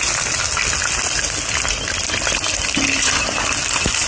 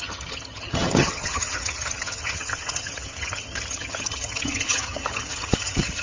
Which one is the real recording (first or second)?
first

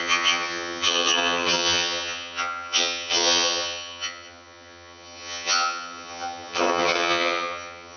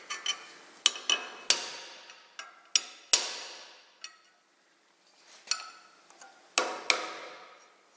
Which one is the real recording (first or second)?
second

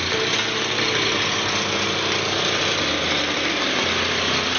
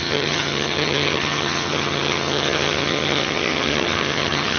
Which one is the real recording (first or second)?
first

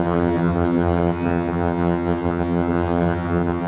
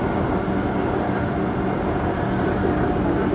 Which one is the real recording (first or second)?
second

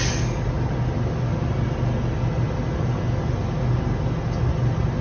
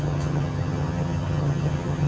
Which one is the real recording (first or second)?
first